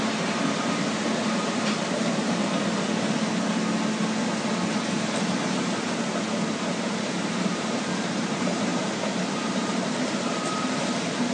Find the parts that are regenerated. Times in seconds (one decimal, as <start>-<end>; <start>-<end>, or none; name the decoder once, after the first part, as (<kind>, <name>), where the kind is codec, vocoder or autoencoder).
0.0-2.4 (vocoder, BigVGAN v2); 6.8-8.7; 9.3-11.3

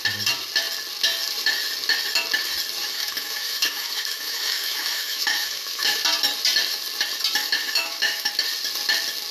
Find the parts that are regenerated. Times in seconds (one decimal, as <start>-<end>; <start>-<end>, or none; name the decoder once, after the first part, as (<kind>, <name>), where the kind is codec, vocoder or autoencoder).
2.8-6.0 (autoencoder, DAC-VAE); 7.4-8.3

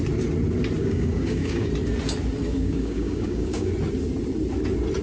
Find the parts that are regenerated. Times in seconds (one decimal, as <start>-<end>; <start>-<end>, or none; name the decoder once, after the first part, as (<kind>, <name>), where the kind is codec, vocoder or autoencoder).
0.8-1.7 (codec, DAC); 2.4-3.7

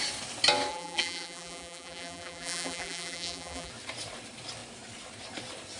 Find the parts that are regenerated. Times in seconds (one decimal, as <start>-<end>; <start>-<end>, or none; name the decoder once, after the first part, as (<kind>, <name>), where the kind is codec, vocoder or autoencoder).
0.7-3.7 (vocoder, BigVGAN v2)

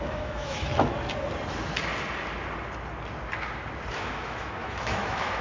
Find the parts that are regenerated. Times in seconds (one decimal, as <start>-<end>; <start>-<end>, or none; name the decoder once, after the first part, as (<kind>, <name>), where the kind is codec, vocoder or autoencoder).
0.0-0.7 (autoencoder, DAC-VAE); 3.9-5.4